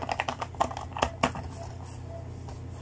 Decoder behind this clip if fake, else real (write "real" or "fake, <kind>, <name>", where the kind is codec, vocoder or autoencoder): real